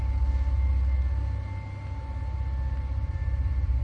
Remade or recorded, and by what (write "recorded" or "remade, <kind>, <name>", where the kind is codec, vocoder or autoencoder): recorded